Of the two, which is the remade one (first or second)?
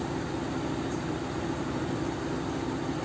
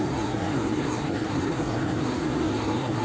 second